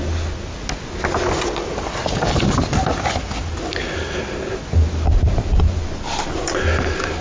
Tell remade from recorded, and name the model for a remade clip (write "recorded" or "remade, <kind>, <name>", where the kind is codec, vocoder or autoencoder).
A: recorded